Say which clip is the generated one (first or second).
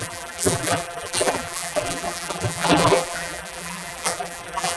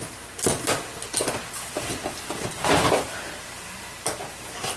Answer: first